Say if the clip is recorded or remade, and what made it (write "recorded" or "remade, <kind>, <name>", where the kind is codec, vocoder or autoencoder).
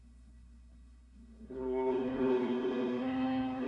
remade, codec, SNAC